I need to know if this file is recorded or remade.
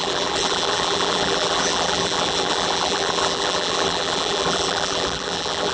remade